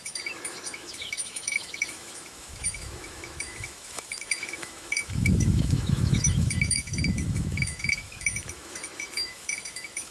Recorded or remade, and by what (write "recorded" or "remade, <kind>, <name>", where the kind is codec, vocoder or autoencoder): remade, autoencoder, DAC-VAE